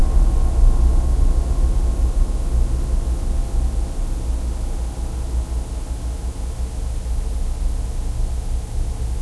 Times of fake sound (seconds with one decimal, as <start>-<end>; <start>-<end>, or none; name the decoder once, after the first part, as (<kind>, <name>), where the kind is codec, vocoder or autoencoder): none